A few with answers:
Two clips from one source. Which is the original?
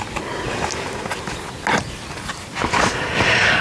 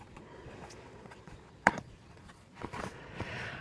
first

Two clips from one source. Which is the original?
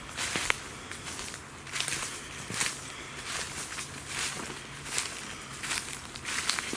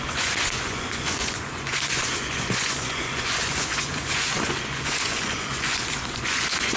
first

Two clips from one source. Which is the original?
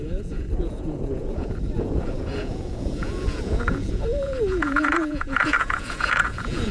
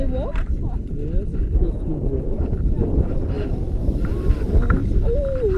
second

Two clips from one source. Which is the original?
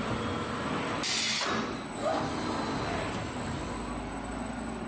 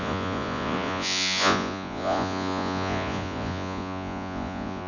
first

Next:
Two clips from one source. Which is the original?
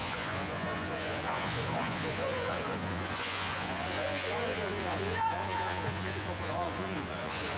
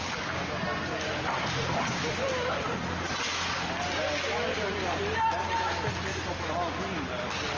second